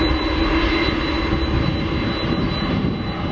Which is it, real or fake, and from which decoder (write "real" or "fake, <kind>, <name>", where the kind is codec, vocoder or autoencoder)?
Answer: real